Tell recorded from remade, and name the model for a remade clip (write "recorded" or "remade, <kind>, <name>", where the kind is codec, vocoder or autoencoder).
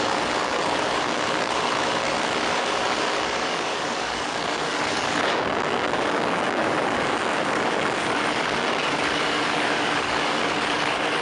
remade, codec, DAC